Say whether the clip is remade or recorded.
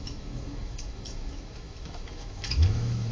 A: remade